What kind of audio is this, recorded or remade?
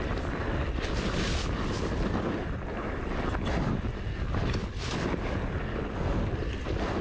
recorded